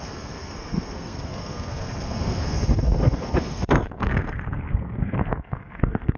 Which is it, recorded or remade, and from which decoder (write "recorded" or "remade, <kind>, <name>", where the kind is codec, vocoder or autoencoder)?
remade, codec, SNAC